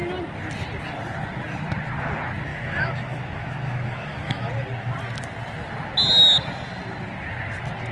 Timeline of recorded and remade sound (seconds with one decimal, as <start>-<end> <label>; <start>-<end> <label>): 0.0-2.5 recorded; 2.5-4.5 remade; 4.5-7.9 recorded